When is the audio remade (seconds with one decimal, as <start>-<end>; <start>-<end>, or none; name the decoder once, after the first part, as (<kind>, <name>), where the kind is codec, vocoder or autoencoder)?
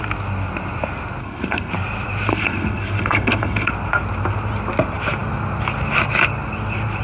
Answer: 1.2-1.7 (codec, SNAC); 2.3-3.7